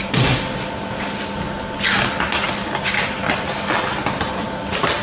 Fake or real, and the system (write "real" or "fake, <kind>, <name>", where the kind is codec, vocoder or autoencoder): real